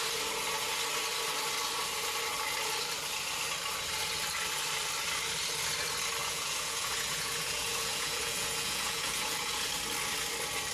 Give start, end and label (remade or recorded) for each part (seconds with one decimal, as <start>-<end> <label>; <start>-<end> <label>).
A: 0.0-6.2 recorded; 6.2-9.7 remade; 9.7-10.7 recorded